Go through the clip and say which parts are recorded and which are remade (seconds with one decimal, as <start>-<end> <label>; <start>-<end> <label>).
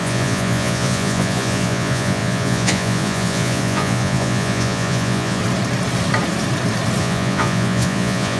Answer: 0.0-5.4 remade; 5.4-7.0 recorded; 7.0-8.4 remade